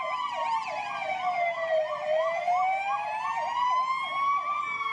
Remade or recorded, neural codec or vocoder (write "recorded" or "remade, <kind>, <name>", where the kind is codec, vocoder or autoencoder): recorded